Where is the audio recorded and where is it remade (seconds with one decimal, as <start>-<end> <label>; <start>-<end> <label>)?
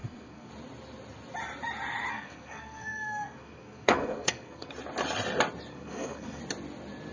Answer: 0.0-0.5 remade; 0.5-2.1 recorded; 2.1-4.7 remade; 4.7-5.7 recorded; 5.7-6.4 remade; 6.4-7.1 recorded